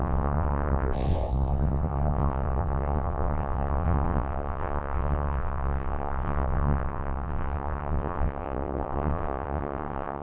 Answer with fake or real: fake